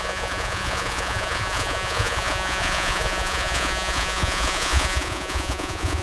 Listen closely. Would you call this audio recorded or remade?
remade